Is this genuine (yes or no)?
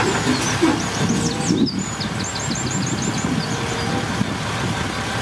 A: yes